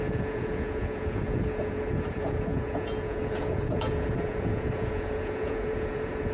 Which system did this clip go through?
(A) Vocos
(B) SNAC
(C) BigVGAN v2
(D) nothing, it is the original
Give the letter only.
A